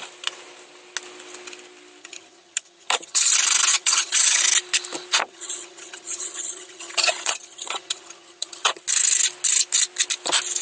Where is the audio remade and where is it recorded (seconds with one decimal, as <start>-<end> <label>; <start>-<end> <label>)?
0.0-2.0 recorded; 2.0-3.3 remade; 3.3-3.7 recorded; 3.7-4.4 remade; 4.4-5.2 recorded; 5.2-8.8 remade; 8.8-10.6 recorded